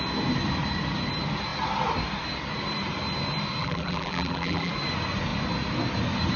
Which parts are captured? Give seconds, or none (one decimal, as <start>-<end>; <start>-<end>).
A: 0.0-3.6; 4.7-6.4